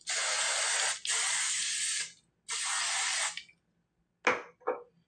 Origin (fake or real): real